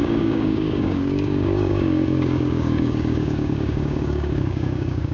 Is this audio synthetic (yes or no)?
yes